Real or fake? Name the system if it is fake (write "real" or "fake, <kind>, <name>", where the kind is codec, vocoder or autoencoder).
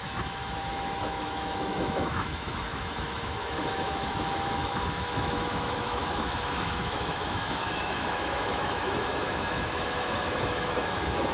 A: fake, autoencoder, DAC-VAE